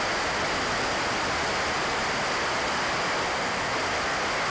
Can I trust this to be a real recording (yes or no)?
yes